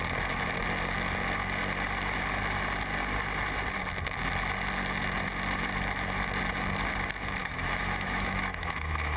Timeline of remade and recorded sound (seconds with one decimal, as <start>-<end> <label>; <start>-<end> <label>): 0.0-7.4 recorded; 7.4-9.2 remade